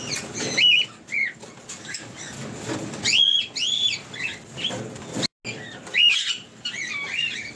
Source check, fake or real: real